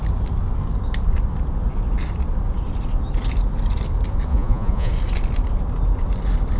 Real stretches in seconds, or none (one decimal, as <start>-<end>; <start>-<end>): 0.0-4.3; 4.9-6.6